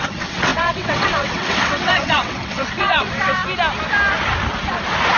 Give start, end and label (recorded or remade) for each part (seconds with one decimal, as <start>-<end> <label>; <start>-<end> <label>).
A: 0.0-3.4 remade; 3.4-5.2 recorded